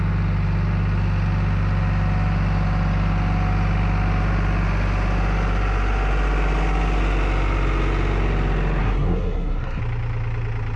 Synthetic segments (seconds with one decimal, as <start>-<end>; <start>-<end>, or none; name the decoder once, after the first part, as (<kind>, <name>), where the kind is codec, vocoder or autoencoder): 8.8-9.8 (codec, SNAC)